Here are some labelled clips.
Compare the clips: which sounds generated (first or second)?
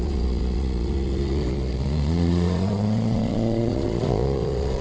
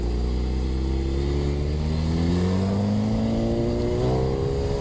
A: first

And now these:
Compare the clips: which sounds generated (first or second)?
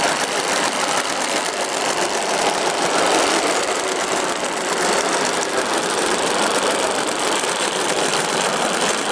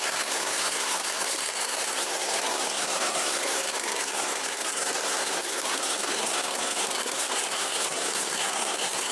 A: second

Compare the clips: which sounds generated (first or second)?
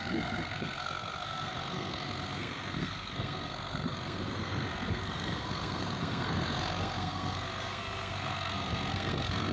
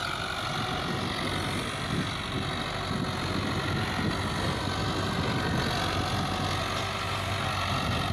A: first